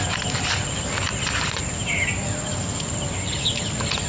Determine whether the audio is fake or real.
real